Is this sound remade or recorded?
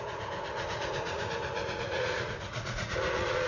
remade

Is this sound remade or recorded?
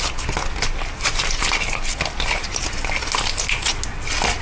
recorded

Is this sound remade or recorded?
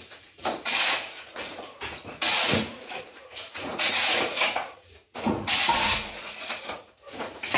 remade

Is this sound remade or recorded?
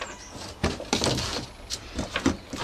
recorded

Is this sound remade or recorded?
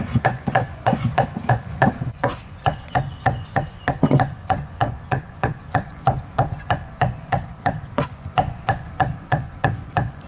remade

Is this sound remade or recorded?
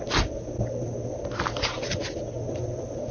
recorded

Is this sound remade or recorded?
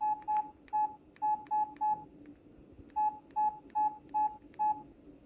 recorded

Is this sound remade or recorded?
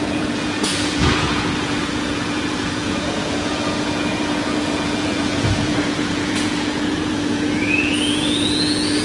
remade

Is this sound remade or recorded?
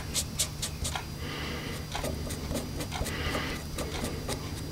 recorded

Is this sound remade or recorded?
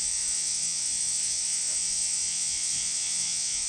remade